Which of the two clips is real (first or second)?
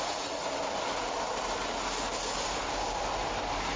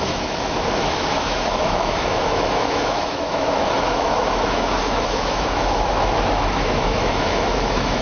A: first